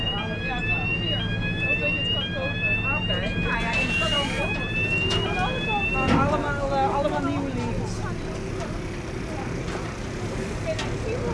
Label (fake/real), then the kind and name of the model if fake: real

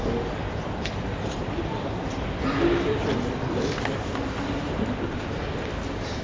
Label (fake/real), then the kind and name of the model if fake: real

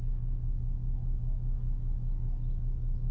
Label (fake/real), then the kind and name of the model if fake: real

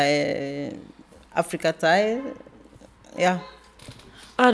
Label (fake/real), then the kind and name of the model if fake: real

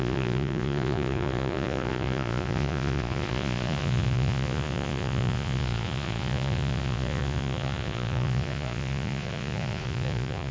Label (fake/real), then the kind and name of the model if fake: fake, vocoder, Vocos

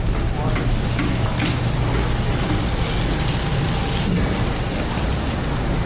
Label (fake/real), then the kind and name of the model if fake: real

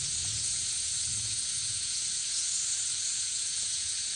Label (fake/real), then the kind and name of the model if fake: fake, vocoder, Vocos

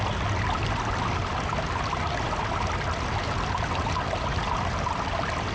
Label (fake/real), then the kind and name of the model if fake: real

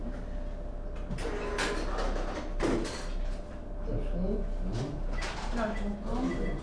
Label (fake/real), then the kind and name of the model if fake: real